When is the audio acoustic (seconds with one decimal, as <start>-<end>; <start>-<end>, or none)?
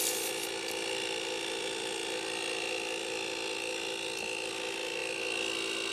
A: 0.0-5.9